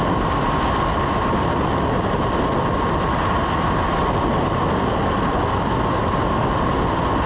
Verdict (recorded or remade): recorded